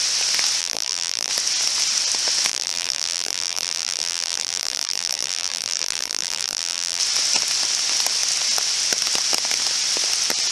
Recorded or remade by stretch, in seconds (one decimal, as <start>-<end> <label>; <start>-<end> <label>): 0.0-0.6 recorded; 0.6-1.3 remade; 1.3-2.5 recorded; 2.5-7.0 remade; 7.0-10.5 recorded